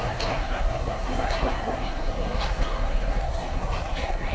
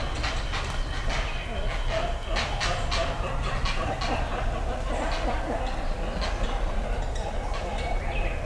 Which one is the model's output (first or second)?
first